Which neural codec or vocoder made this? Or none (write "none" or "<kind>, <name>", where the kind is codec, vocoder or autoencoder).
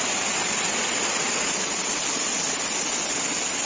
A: none